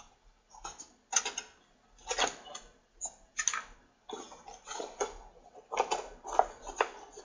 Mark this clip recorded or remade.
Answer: recorded